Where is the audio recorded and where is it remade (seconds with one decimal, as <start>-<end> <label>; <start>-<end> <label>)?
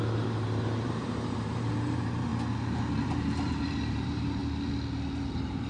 0.0-2.3 remade; 2.3-2.9 recorded; 2.9-4.4 remade; 4.4-5.3 recorded; 5.3-5.7 remade